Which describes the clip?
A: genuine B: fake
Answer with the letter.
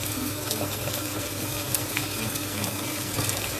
B